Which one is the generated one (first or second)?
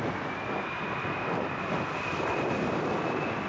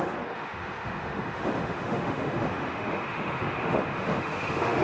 second